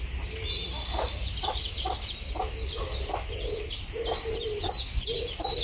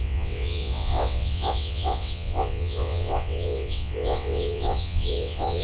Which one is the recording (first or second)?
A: first